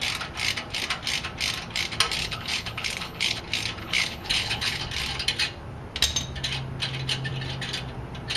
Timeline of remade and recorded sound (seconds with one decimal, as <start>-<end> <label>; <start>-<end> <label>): 0.0-2.2 recorded; 2.2-3.4 remade; 3.4-3.8 recorded; 3.8-4.8 remade; 4.8-8.4 recorded